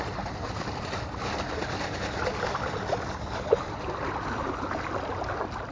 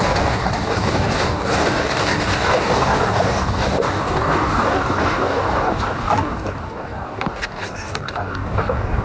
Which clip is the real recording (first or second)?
first